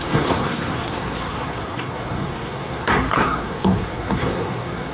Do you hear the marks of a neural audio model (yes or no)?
yes